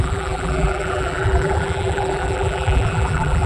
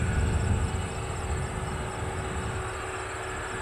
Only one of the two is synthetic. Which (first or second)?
first